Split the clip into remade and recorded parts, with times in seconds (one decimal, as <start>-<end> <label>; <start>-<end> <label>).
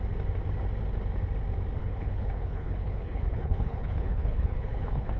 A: 0.0-1.8 recorded; 1.8-5.2 remade